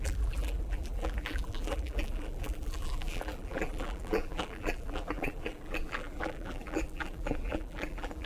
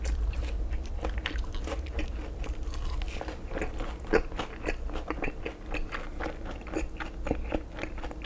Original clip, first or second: second